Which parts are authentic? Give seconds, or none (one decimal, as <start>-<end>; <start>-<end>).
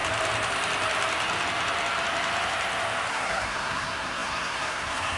0.0-3.1